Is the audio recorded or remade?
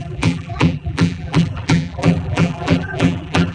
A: remade